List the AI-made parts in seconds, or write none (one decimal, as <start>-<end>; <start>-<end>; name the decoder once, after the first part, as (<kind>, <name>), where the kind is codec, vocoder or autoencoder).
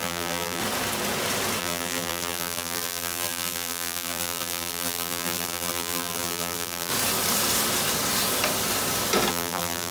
0.0-0.6 (vocoder, BigVGAN v2); 1.6-6.9; 9.3-9.9